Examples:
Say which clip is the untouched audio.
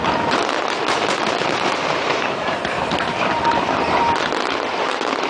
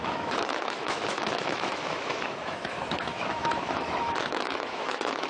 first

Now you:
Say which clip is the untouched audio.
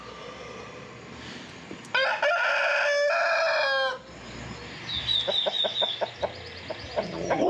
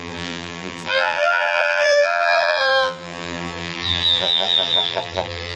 first